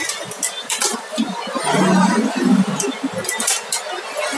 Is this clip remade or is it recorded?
recorded